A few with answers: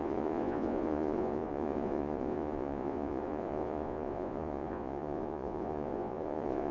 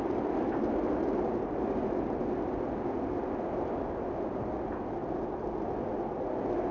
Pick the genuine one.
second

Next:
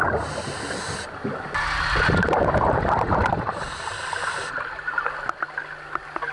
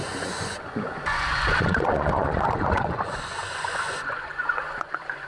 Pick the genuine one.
first